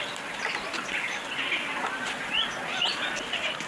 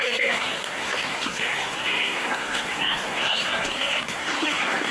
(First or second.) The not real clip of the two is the second